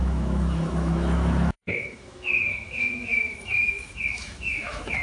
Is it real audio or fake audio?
fake